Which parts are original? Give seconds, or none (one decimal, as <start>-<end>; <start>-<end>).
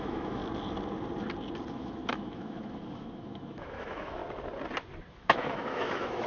0.4-1.7; 4.2-5.1